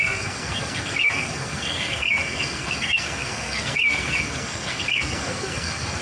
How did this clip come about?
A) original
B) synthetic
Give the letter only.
B